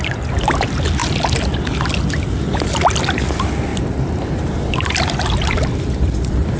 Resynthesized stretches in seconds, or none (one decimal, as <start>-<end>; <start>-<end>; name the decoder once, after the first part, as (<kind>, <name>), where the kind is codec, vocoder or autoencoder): none